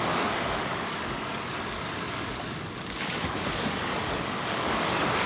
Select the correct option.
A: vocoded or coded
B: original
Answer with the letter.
A